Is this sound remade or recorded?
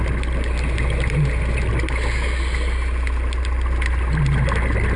recorded